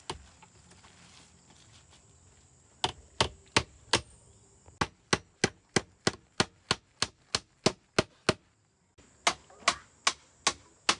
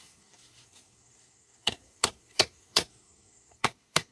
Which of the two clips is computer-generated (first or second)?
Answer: second